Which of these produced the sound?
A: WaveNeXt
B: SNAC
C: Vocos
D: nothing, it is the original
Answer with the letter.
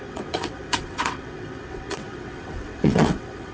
A